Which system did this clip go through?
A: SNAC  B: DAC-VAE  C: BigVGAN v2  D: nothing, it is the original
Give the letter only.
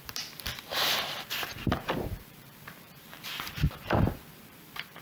C